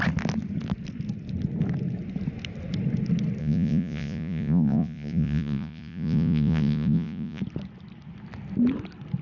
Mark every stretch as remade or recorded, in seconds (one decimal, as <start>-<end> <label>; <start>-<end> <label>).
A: 0.0-3.4 recorded; 3.4-7.4 remade; 7.4-9.2 recorded